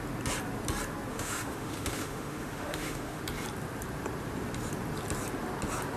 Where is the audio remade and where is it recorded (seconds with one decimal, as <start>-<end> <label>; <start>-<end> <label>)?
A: 0.0-1.1 recorded; 1.1-3.2 remade; 3.2-6.0 recorded